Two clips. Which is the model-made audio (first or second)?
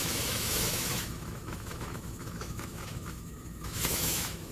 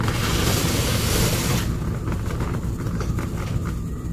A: first